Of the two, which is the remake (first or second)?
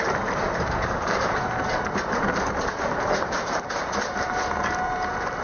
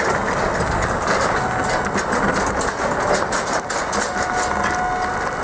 first